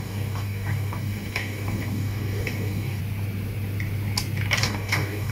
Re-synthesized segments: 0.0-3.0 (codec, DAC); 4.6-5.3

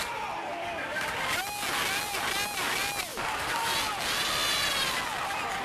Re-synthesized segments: 0.4-1.1 (codec, DAC); 3.1-3.7

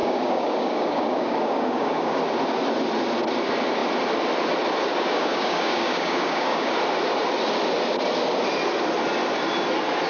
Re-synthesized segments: 0.0-2.2 (codec, DAC); 4.9-6.7

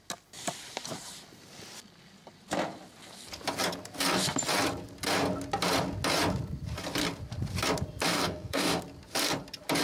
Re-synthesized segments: 8.1-8.8 (codec, DAC)